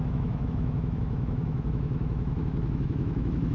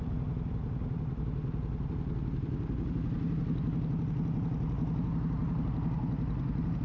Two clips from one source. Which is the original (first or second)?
second